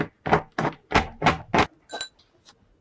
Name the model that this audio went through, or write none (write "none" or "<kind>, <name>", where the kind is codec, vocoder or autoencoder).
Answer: none